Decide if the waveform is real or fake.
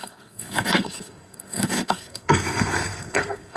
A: fake